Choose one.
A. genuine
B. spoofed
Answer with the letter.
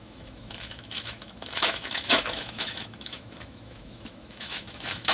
B